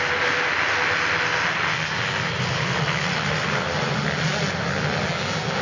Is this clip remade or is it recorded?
recorded